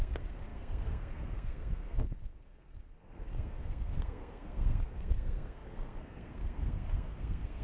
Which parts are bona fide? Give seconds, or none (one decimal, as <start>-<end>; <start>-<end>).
none